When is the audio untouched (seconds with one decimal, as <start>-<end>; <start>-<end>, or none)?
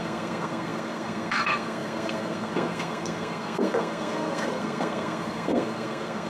none